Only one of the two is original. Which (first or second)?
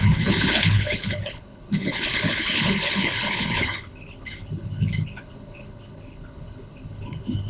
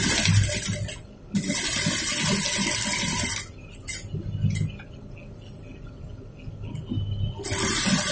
second